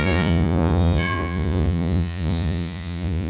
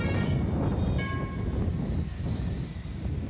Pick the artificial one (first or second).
first